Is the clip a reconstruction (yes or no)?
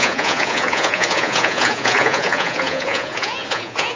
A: yes